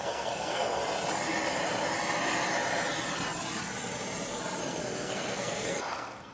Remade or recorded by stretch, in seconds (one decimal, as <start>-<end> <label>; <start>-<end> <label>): 0.0-0.8 remade; 0.8-4.6 recorded; 4.6-6.3 remade